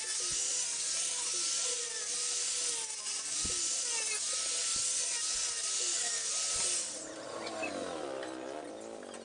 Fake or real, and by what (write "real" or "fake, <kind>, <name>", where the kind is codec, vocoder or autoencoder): real